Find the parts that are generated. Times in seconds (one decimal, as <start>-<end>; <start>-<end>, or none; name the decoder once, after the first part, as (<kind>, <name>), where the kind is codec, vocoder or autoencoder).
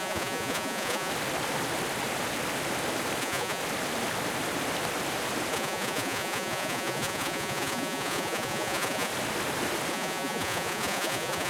0.0-1.1 (vocoder, Vocos); 3.2-3.6; 5.5-9.1; 9.9-11.5